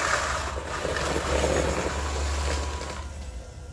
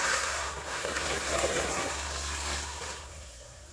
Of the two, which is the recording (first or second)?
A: first